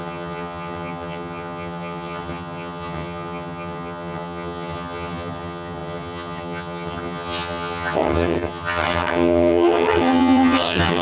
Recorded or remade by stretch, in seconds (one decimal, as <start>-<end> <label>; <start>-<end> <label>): 0.0-11.0 remade